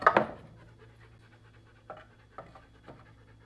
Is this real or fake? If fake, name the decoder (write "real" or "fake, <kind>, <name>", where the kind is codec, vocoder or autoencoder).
real